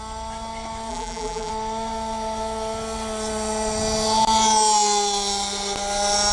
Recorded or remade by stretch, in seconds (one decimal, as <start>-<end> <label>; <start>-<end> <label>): 0.0-0.9 recorded; 0.9-1.5 remade; 1.5-6.3 recorded